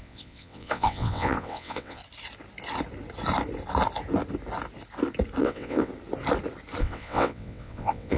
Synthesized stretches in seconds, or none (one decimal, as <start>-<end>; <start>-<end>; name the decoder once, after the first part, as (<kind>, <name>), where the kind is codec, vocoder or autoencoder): 0.0-2.0 (vocoder, WaveNeXt); 5.4-5.9; 6.8-8.2